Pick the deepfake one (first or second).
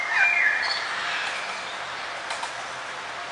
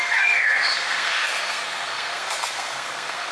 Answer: second